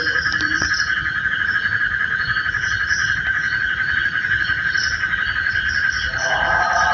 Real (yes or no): no